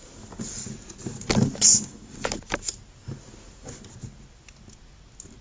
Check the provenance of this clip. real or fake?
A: real